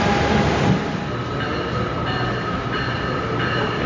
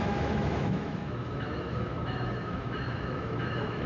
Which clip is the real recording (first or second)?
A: first